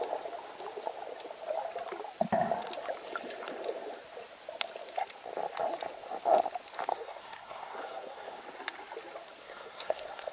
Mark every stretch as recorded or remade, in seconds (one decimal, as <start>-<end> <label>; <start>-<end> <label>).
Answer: 0.0-6.9 recorded; 6.9-8.4 remade; 8.4-9.4 recorded; 9.4-10.3 remade